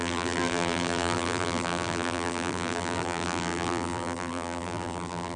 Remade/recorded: remade